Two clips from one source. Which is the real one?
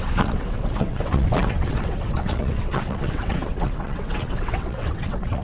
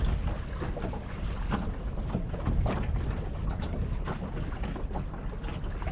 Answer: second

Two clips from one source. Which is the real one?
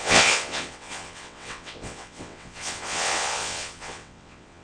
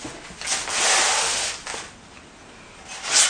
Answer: second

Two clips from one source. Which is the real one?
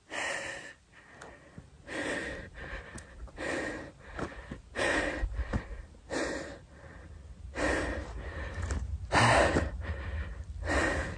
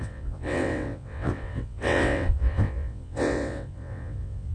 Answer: first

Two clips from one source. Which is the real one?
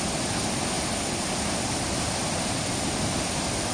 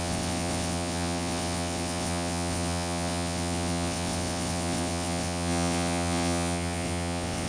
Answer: first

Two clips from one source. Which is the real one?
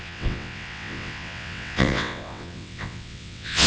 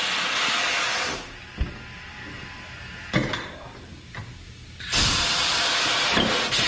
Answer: second